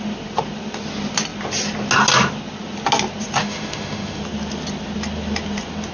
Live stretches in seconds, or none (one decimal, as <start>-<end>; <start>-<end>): 0.0-3.4; 4.2-5.9